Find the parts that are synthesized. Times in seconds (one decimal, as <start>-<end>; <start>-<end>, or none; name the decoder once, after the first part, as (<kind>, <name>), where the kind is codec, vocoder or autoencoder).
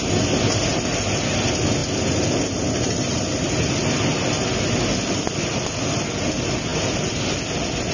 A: none